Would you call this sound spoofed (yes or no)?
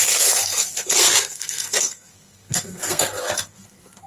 yes